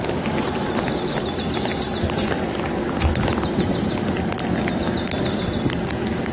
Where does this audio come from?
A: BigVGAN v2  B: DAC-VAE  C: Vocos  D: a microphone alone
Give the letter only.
A